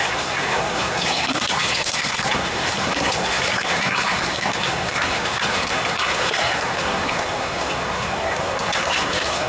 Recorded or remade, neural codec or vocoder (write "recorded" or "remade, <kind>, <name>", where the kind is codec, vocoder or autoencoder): remade, codec, SNAC